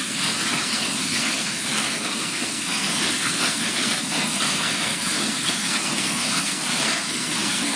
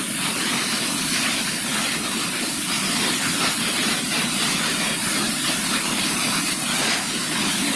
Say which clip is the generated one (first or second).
first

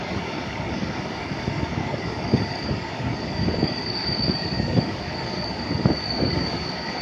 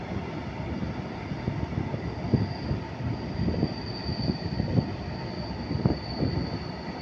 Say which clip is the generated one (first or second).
first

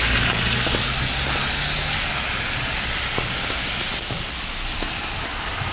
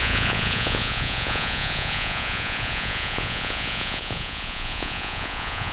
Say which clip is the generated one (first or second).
second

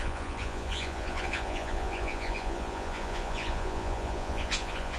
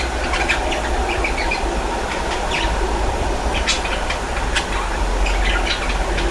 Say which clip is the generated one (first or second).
first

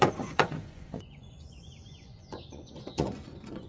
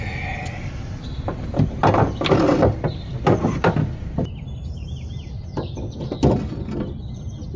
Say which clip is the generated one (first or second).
first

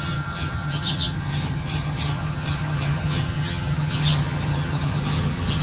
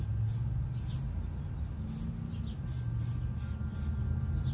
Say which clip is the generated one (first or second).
first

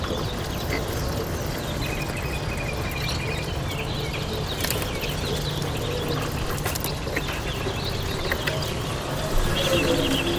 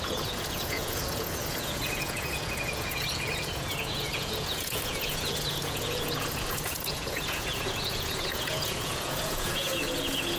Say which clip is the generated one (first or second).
second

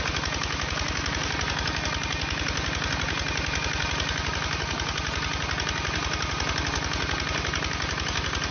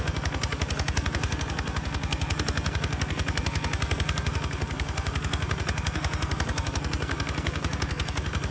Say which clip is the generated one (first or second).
second